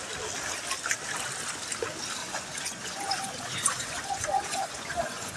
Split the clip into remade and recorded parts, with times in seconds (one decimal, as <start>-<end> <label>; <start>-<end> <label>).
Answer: 0.0-2.2 recorded; 2.2-5.4 remade

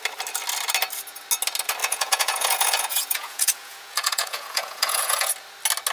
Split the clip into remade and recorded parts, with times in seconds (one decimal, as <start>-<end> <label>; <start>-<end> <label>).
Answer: 0.0-1.8 recorded; 1.8-5.3 remade; 5.3-5.9 recorded

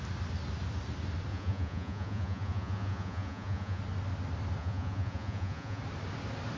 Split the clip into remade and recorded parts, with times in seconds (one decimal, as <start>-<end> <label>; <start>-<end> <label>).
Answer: 0.0-1.3 recorded; 1.3-3.8 remade; 3.8-4.6 recorded; 4.6-5.8 remade; 5.8-6.6 recorded